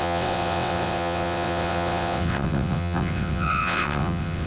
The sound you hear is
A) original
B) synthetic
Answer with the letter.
B